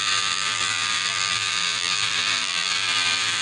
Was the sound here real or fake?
fake